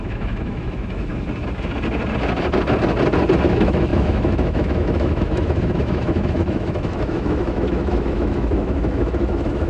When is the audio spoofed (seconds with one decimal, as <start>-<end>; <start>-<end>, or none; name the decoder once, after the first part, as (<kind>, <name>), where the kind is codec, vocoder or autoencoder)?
0.0-1.1 (autoencoder, DAC-VAE); 3.5-9.7